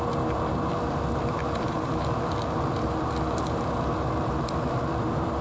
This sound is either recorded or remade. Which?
remade